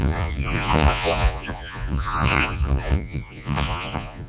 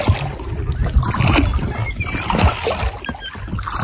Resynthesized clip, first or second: first